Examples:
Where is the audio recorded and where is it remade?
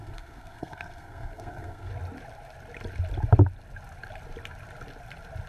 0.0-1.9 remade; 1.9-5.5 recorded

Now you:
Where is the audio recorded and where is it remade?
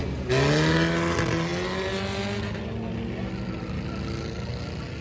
0.0-5.0 recorded